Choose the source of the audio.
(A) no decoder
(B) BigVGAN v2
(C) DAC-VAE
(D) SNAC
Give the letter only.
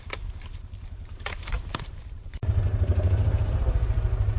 B